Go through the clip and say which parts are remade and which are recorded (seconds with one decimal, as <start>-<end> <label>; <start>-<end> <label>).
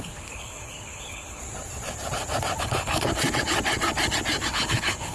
0.0-1.4 remade; 1.4-2.6 recorded; 2.6-3.1 remade; 3.1-4.5 recorded; 4.5-5.1 remade